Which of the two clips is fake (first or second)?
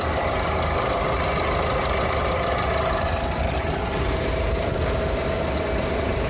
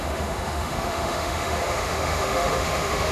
second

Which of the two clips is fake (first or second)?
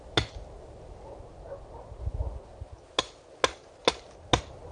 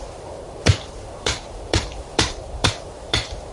second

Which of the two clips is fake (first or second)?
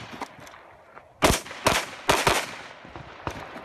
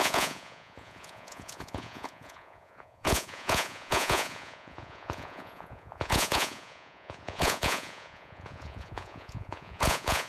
second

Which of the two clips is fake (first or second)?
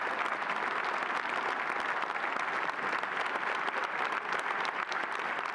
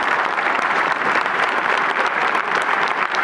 second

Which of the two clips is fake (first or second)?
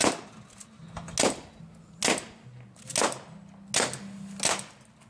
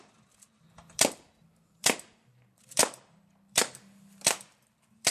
second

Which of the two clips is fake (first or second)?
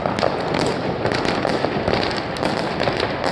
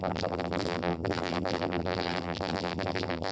second